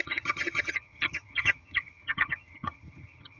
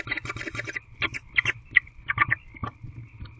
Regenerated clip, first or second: first